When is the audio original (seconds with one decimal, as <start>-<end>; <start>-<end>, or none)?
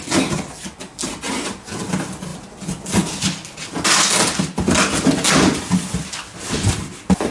0.0-7.3